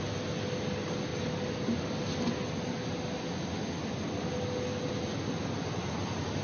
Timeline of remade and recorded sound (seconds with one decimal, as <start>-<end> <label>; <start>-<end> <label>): 0.0-6.4 recorded